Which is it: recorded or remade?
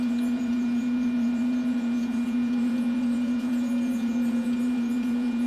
remade